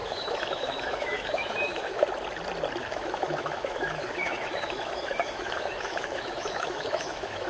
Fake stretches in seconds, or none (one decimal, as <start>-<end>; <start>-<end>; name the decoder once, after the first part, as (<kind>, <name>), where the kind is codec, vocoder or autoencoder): 0.0-2.0 (autoencoder, DAC-VAE); 2.8-7.5